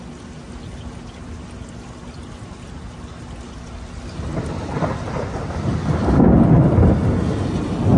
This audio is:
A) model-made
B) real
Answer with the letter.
B